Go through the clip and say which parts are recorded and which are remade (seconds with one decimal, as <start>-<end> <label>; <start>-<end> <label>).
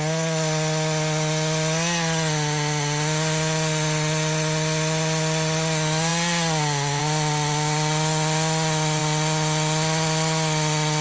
0.0-11.0 recorded